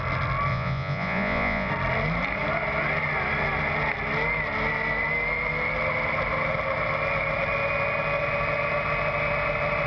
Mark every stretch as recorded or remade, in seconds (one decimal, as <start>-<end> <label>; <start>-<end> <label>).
0.0-0.5 recorded; 0.5-1.7 remade; 1.7-9.9 recorded